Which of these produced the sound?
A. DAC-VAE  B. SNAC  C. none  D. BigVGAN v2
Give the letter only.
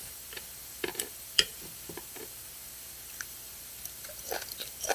D